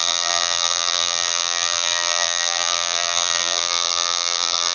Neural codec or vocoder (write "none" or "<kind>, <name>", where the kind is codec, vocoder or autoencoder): vocoder, BigVGAN v2